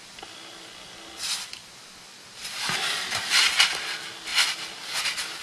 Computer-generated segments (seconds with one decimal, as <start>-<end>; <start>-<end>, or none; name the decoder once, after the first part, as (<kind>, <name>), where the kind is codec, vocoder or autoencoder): none